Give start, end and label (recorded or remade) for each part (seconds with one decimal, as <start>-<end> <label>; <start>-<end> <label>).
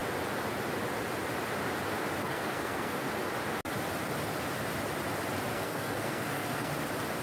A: 0.0-2.2 recorded; 2.2-3.1 remade; 3.1-5.5 recorded; 5.5-6.7 remade; 6.7-7.2 recorded